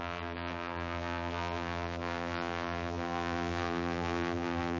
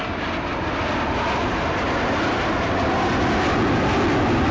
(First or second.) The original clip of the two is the second